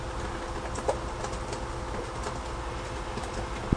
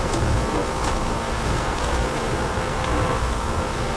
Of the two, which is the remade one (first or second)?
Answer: second